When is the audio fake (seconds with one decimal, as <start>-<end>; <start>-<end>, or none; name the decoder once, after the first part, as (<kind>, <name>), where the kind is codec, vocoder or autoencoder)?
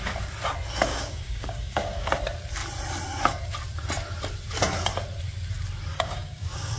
0.9-2.1 (codec, DAC); 5.9-6.8